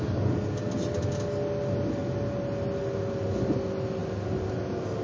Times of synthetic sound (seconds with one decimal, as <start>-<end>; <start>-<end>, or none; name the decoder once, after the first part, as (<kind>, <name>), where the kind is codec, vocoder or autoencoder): none